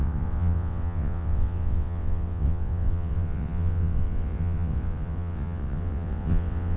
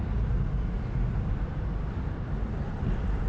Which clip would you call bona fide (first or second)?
second